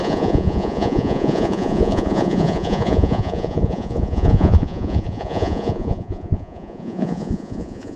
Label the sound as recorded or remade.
remade